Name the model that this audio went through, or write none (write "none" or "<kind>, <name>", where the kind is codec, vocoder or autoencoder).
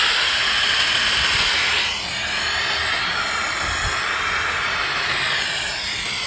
none